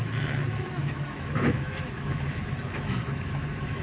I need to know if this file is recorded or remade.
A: remade